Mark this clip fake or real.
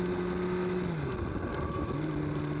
real